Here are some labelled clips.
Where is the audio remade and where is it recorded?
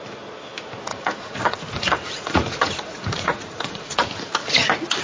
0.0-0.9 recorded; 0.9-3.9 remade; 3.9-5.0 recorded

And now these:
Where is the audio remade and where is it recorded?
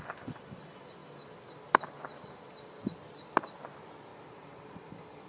0.0-4.1 recorded; 4.1-5.3 remade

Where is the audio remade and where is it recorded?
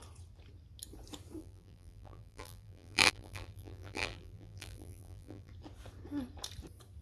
0.0-1.4 recorded; 1.4-5.5 remade; 5.5-7.0 recorded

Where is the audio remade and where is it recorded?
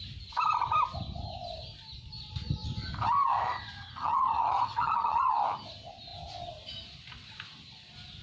0.0-3.8 recorded; 3.8-5.3 remade; 5.3-8.2 recorded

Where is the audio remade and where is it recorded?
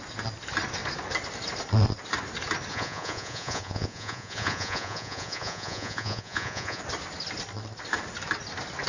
0.0-2.7 recorded; 2.7-6.8 remade; 6.8-8.9 recorded